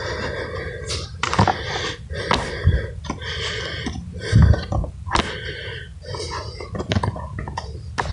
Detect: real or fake real